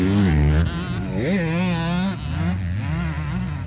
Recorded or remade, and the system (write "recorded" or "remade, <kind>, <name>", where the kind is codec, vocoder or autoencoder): recorded